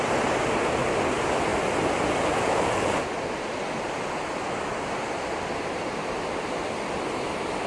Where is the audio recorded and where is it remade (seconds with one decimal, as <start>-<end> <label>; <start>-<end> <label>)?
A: 0.0-7.7 recorded